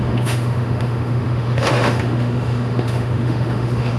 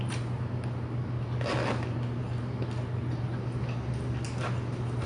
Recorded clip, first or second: second